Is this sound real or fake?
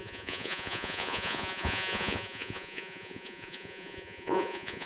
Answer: fake